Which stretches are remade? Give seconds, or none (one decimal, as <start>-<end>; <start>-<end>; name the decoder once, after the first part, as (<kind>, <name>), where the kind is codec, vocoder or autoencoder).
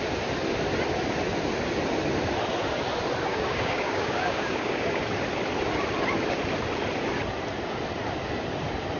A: 3.3-5.0 (codec, DAC)